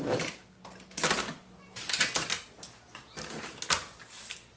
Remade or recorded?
recorded